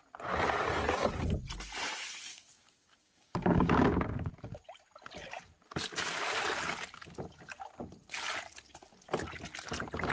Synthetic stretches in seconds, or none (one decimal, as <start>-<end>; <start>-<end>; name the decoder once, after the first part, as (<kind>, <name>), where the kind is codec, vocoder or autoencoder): 2.3-4.3 (codec, DAC)